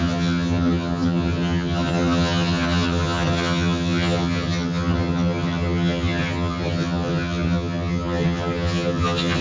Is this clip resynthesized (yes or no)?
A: yes